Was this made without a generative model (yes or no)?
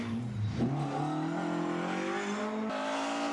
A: yes